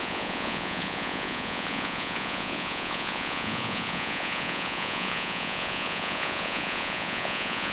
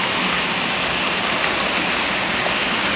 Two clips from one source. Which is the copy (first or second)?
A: first